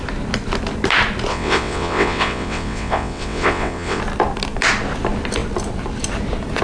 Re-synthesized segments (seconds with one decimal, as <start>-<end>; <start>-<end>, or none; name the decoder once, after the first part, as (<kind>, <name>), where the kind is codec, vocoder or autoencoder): 1.3-4.0 (vocoder, WaveNeXt)